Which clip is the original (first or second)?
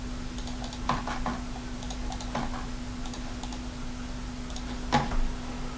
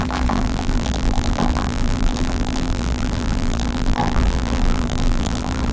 first